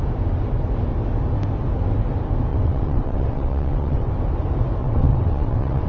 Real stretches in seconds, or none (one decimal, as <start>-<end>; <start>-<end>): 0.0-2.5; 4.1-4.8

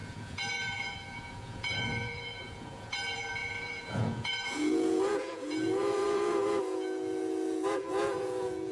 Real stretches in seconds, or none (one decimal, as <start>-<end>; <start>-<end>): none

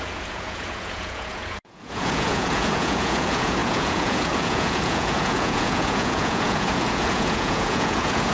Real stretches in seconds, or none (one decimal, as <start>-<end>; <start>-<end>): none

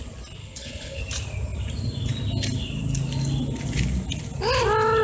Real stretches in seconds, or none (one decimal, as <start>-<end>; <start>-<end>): 0.0-0.4; 1.0-5.0

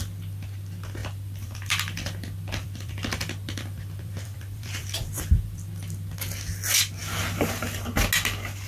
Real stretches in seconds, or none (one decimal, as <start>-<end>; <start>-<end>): 0.0-1.0; 5.7-8.7